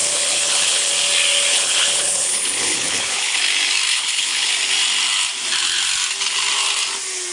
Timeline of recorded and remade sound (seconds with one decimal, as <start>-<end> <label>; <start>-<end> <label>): 0.0-0.9 remade; 0.9-1.5 recorded; 1.5-3.4 remade; 3.4-3.9 recorded; 3.9-4.5 remade; 4.5-7.3 recorded